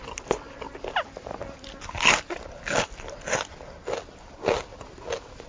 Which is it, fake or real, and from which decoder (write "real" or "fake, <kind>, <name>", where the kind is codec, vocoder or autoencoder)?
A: real